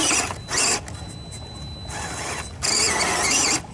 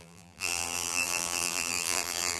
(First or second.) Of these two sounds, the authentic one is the first